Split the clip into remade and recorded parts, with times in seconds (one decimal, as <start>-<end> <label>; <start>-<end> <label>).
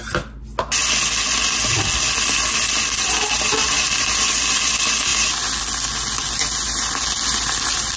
0.0-8.0 recorded